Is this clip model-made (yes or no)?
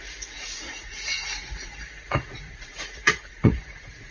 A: yes